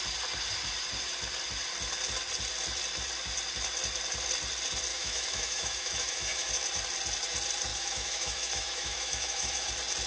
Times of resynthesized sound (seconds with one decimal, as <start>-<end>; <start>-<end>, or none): 4.9-6.5; 7.7-9.7